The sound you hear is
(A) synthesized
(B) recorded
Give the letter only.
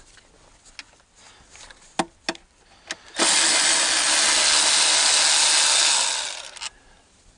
B